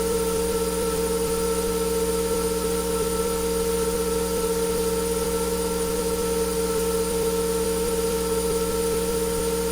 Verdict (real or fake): fake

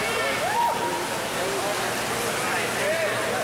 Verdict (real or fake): real